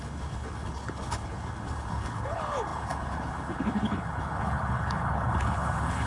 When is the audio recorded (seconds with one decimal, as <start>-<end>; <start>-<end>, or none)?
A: none